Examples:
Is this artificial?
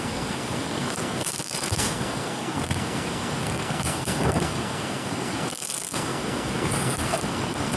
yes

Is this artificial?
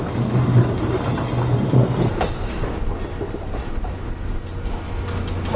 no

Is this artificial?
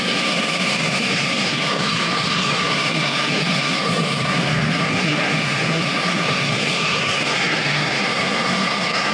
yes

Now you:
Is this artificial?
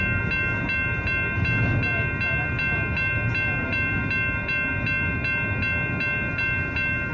no